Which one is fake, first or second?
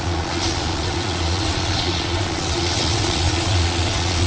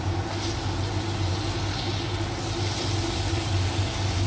first